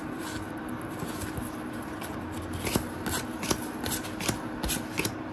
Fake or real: real